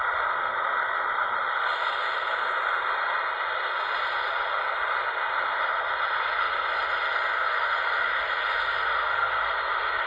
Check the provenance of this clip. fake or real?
real